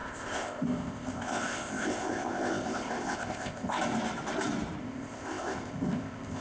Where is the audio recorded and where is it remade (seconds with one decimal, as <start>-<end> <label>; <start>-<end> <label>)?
0.0-3.8 remade; 3.8-4.8 recorded; 4.8-6.4 remade